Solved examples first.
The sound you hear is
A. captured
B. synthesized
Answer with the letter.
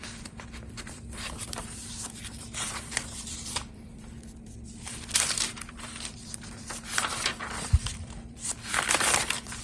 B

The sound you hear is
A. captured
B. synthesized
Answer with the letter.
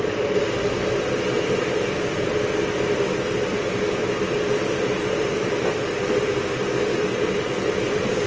A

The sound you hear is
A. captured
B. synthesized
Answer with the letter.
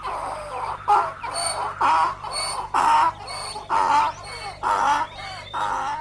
A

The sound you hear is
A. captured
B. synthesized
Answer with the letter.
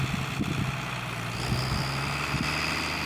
A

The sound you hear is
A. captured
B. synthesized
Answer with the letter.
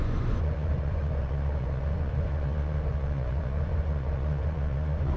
B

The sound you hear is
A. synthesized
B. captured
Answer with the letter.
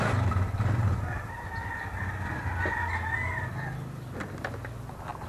B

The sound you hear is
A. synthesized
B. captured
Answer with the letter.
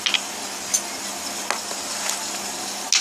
B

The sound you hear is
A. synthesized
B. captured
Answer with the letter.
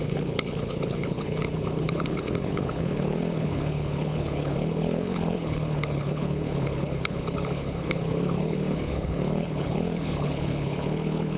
A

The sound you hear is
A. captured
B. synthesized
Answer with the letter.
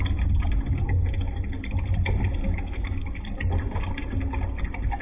A